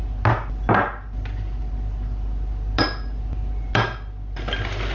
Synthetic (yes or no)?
no